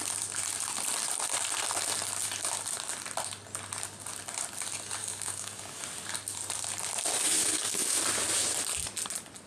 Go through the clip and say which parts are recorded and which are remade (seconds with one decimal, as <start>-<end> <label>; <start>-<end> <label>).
0.0-5.0 recorded; 5.0-5.8 remade; 5.8-7.4 recorded; 7.4-8.0 remade; 8.0-9.5 recorded